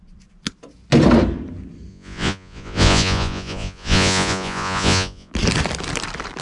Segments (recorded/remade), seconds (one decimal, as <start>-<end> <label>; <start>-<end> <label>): 0.0-1.9 recorded; 1.9-5.3 remade; 5.3-6.4 recorded